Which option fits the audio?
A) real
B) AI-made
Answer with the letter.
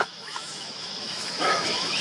B